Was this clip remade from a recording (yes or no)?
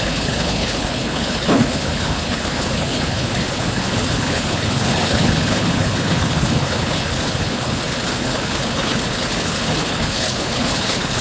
yes